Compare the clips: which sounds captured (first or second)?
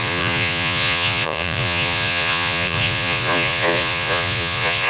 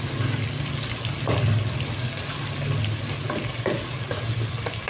second